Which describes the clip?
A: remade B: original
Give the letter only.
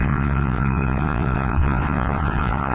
A